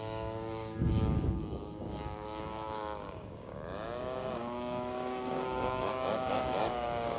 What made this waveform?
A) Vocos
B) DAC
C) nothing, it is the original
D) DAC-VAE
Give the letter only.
B